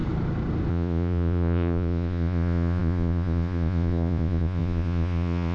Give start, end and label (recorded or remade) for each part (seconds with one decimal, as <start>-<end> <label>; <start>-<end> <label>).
0.0-0.7 recorded; 0.7-5.5 remade